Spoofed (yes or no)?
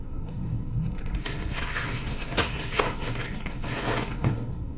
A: yes